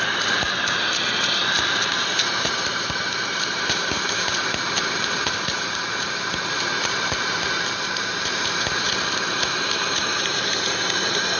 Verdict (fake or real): fake